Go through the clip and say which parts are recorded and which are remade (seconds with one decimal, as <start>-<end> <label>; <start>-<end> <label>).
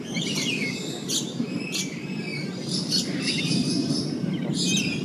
0.0-5.0 recorded